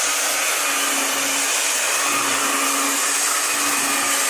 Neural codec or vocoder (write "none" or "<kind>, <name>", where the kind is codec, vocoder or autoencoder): none